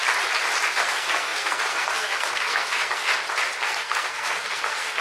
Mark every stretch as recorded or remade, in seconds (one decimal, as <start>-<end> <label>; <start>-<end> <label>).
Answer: 0.0-0.8 recorded; 0.8-3.1 remade; 3.1-3.6 recorded; 3.6-5.0 remade